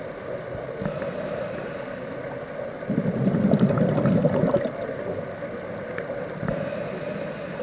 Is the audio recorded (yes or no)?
yes